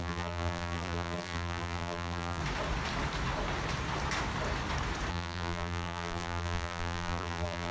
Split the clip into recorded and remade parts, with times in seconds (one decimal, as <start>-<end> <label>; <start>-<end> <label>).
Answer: 0.0-2.4 remade; 2.4-5.1 recorded; 5.1-7.7 remade